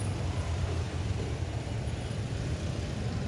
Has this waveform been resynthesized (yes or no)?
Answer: yes